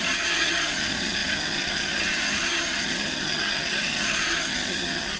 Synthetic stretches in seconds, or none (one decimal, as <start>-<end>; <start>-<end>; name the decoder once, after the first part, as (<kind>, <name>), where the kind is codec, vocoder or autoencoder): 0.0-5.2 (vocoder, HiFi-GAN)

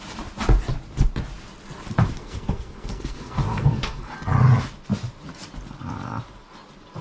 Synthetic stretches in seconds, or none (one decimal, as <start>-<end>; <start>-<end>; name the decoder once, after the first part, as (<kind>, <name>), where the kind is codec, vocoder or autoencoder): 2.2-4.1 (codec, SNAC)

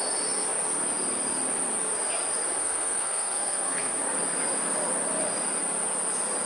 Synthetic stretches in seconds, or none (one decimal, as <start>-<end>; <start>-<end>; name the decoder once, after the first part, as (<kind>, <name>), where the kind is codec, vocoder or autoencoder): 2.6-3.9 (codec, SNAC)

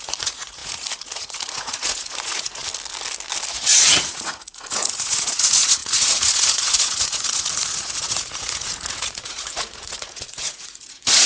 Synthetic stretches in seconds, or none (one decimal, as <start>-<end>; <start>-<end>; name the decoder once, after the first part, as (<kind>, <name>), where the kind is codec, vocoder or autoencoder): 0.0-2.6 (vocoder, Vocos); 3.5-11.3

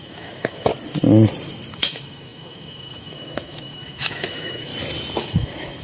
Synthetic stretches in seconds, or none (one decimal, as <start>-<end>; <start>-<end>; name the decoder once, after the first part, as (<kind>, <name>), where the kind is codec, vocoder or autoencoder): 0.0-0.7 (autoencoder, DAC-VAE); 1.7-4.7; 5.2-5.8